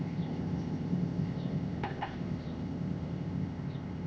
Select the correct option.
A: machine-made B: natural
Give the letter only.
A